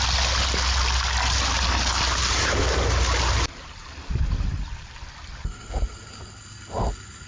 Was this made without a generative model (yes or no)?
yes